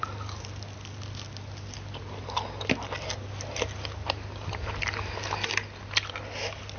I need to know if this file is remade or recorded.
recorded